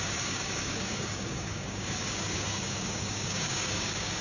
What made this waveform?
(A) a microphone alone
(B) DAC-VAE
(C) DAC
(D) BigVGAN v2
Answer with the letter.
C